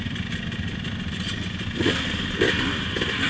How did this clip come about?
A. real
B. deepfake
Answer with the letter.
A